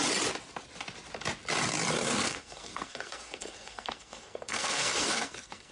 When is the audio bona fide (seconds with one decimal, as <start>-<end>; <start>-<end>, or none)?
0.0-2.0